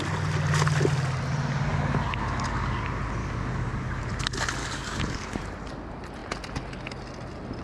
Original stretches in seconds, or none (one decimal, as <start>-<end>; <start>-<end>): 0.0-1.7; 2.8-3.2; 4.0-4.6; 5.4-7.6